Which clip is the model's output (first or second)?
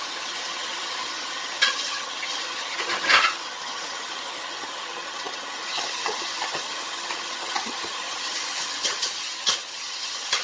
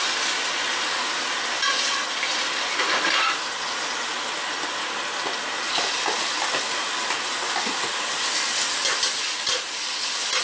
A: first